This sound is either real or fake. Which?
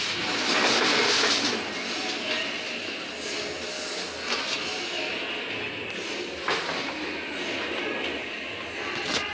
real